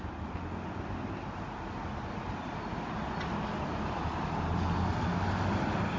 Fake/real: real